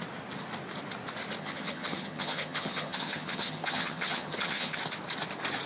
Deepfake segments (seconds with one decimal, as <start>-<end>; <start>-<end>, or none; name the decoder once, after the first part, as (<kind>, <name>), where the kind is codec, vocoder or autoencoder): 1.4-4.8 (vocoder, HiFi-GAN)